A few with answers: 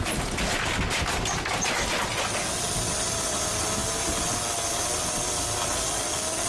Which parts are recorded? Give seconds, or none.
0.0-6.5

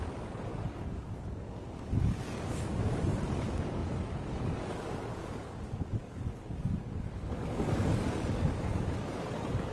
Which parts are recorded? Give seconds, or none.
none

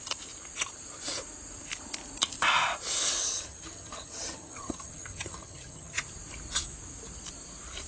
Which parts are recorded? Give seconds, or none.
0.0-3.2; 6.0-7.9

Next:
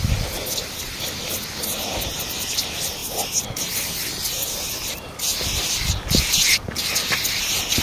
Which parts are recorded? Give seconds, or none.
0.0-7.8